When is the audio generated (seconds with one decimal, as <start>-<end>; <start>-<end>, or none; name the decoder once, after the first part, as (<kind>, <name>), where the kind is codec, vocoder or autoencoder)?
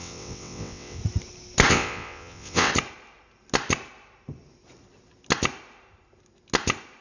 0.0-1.0 (vocoder, WaveNeXt); 1.7-2.7